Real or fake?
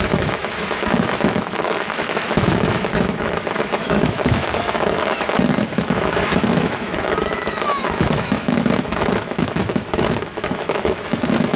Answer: fake